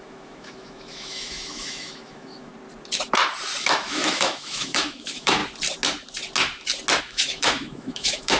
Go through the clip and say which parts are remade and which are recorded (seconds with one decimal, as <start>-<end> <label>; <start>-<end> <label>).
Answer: 0.0-2.5 remade; 2.5-3.6 recorded; 3.6-5.4 remade; 5.4-7.0 recorded; 7.0-8.4 remade